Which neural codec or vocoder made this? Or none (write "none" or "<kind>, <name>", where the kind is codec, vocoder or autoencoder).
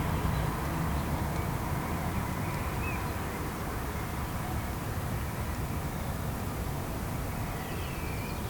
none